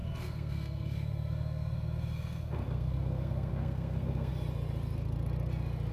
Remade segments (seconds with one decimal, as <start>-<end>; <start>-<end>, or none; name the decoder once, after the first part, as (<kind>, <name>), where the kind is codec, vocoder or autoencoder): 0.0-4.3 (codec, SNAC)